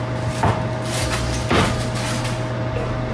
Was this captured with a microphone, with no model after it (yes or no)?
yes